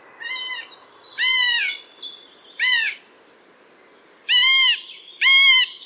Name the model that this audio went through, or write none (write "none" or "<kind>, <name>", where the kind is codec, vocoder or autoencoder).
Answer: none